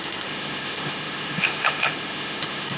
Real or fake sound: fake